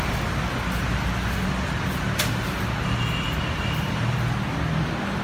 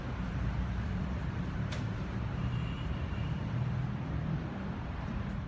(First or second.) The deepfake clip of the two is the second